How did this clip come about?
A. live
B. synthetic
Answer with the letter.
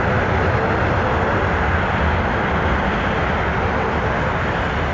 A